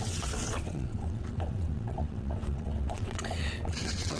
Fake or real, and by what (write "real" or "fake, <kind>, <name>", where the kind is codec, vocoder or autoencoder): fake, vocoder, WaveNeXt